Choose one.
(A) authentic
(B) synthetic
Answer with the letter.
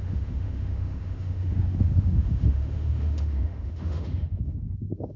B